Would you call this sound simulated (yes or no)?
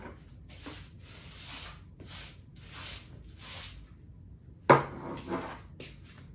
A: no